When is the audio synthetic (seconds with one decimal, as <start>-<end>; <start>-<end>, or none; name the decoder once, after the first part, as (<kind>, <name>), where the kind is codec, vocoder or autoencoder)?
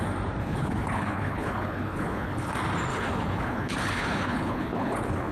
0.4-2.5 (codec, HILCodec); 2.9-5.3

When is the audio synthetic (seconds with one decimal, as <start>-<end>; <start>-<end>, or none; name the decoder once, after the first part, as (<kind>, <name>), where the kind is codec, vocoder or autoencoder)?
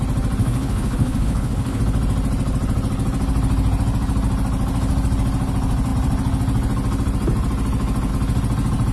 0.4-1.8 (codec, HILCodec)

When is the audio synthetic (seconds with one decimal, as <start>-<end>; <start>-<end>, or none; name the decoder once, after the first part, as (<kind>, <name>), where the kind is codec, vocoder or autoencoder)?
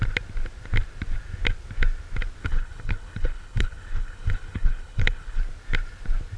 2.4-5.4 (codec, HILCodec)